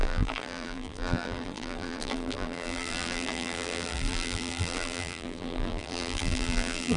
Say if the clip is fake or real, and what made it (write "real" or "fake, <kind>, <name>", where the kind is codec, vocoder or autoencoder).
fake, vocoder, BigVGAN v2